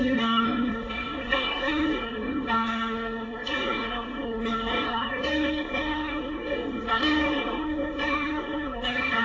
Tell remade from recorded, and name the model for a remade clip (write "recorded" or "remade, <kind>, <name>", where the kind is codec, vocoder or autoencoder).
remade, codec, SNAC